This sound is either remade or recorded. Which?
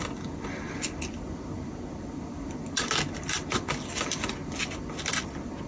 recorded